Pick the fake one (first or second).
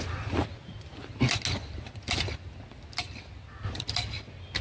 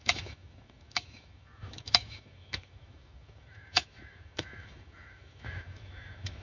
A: second